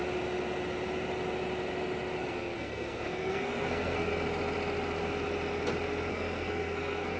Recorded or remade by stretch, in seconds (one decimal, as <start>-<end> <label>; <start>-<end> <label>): 0.0-2.2 recorded; 2.2-4.1 remade; 4.1-6.1 recorded; 6.1-7.2 remade